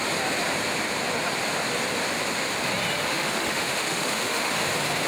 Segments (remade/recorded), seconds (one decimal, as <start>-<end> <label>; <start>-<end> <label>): 0.0-3.1 recorded; 3.1-4.5 remade; 4.5-5.1 recorded